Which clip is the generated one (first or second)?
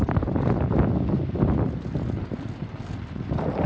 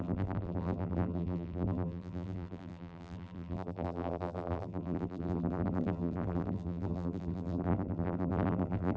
second